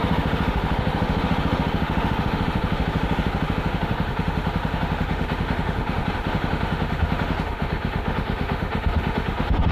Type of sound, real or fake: fake